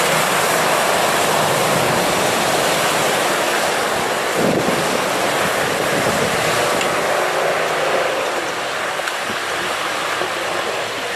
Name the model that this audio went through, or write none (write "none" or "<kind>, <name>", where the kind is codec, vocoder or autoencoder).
none